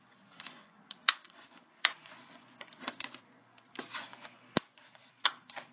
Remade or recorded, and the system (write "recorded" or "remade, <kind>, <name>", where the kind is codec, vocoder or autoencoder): remade, vocoder, Vocos